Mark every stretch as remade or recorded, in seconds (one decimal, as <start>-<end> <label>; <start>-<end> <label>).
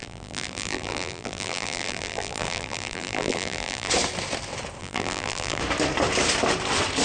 0.0-3.9 remade; 3.9-4.8 recorded; 4.8-5.6 remade; 5.6-7.0 recorded